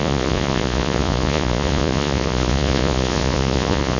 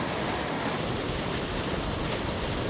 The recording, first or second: second